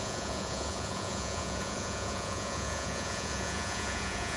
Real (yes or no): no